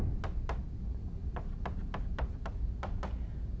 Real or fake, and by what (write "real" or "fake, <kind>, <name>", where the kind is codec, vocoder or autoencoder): real